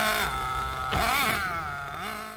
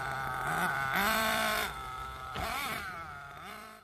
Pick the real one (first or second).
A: first